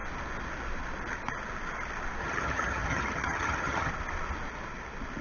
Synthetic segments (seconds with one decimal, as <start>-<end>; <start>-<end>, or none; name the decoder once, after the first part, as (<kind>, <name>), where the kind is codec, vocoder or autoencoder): 2.2-3.9 (vocoder, HiFi-GAN)